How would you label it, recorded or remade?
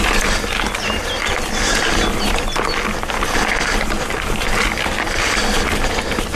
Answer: recorded